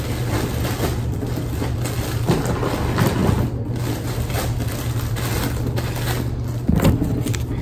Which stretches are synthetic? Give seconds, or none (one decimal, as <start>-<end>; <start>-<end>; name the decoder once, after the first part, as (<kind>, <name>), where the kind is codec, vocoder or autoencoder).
none